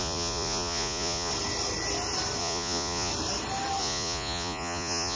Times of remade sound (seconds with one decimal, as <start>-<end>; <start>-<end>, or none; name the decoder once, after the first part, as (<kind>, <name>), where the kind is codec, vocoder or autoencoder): 0.0-1.3 (vocoder, Vocos); 2.4-3.1; 3.8-5.2